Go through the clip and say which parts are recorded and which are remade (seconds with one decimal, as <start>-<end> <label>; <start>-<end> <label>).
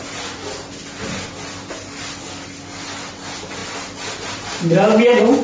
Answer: 0.0-5.4 recorded